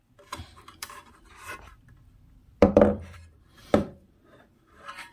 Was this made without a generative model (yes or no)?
no